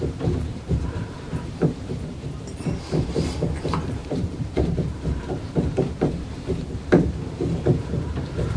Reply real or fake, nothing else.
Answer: fake